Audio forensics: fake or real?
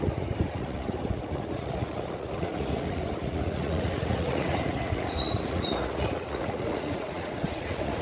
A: fake